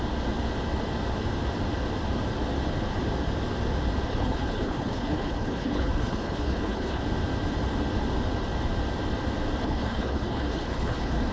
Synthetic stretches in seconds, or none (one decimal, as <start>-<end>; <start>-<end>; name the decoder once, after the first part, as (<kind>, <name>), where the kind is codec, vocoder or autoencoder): 4.1-7.0 (codec, HILCodec); 9.6-11.3